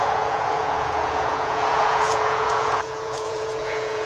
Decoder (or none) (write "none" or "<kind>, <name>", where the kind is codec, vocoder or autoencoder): vocoder, Vocos